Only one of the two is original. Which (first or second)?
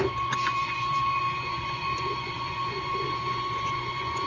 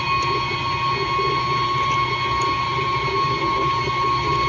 second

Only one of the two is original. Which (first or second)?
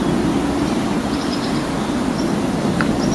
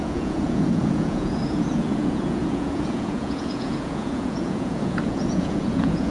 first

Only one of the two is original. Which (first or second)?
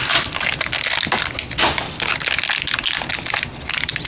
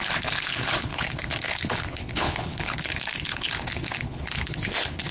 first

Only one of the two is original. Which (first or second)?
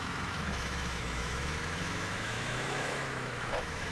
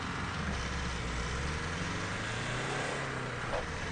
second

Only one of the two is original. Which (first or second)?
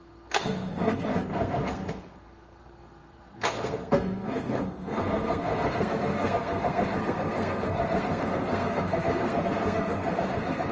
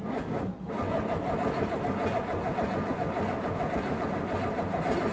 second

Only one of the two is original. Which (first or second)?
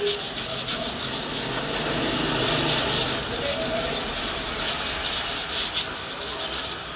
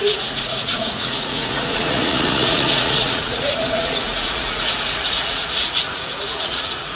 first